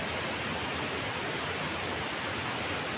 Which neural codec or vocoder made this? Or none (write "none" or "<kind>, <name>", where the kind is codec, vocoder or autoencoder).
none